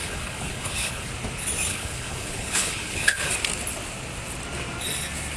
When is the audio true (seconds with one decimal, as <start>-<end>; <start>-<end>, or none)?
1.1-1.7; 3.3-5.4